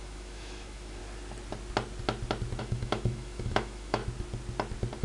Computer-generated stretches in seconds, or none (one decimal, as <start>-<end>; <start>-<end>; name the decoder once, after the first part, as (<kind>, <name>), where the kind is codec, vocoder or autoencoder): 0.0-1.0 (autoencoder, DAC-VAE); 2.6-4.0